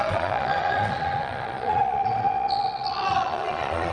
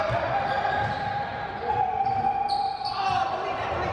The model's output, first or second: first